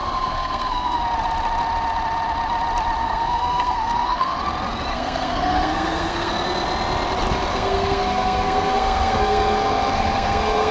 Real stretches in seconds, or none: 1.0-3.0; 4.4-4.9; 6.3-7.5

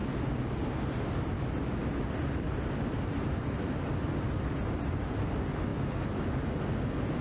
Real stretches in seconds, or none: 0.0-7.2

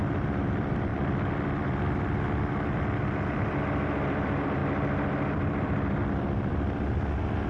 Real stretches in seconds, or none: none

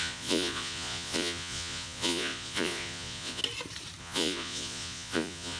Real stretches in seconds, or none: 3.4-4.0

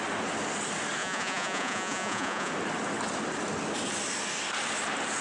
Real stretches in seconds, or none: 0.0-1.0; 2.5-5.2

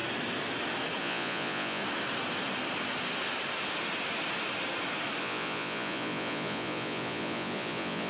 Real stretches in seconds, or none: 0.0-1.0; 1.8-5.2

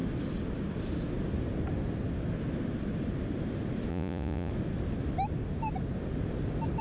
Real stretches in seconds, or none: 0.0-3.9; 4.5-6.8

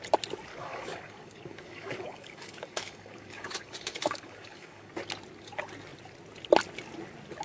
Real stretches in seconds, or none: 0.0-0.5; 4.9-7.4